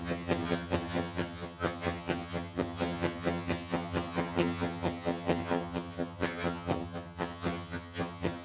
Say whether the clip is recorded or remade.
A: remade